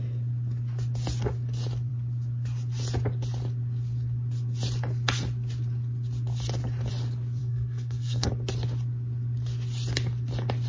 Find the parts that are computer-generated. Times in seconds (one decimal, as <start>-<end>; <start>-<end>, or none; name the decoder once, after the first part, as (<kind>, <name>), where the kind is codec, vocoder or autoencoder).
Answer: 7.4-8.3 (codec, SNAC)